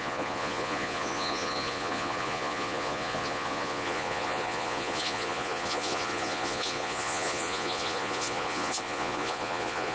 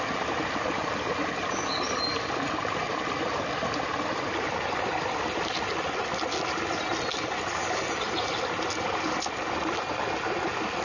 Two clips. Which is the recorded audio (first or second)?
second